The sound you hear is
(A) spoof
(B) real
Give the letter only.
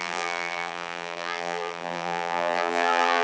A